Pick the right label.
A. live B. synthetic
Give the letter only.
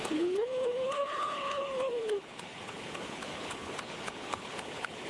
B